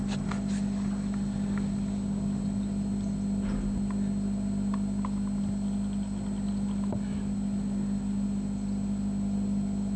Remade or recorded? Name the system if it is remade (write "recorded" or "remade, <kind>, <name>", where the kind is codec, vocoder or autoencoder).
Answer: recorded